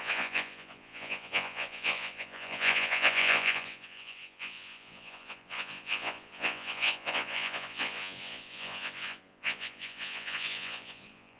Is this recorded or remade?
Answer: remade